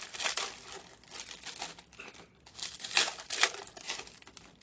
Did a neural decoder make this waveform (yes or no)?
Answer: no